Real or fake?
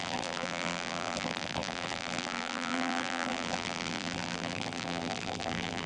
fake